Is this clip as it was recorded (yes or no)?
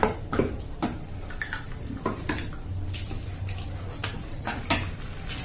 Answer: yes